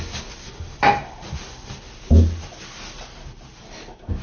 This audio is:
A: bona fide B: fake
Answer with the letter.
B